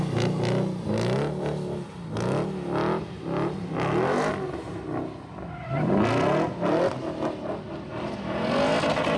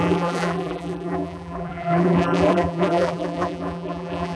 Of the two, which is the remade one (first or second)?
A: second